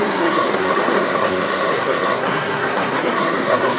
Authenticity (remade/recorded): remade